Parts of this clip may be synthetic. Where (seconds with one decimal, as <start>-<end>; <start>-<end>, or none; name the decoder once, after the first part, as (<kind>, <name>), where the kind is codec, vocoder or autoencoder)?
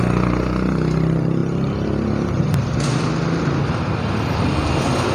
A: none